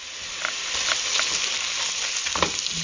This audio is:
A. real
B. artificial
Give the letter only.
A